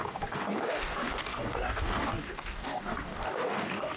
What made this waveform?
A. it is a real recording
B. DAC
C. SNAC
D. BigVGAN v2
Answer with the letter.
B